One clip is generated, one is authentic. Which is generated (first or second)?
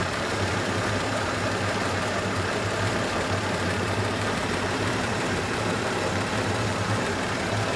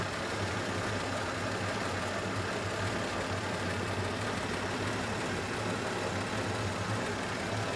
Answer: first